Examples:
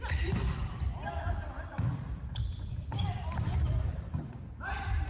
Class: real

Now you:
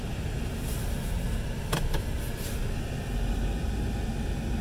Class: real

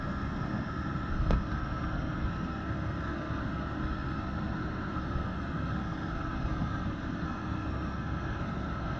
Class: fake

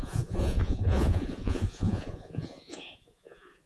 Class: fake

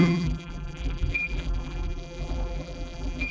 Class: fake